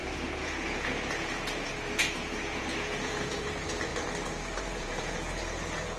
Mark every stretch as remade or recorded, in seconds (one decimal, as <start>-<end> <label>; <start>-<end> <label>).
0.0-3.9 remade; 3.9-4.6 recorded; 4.6-6.0 remade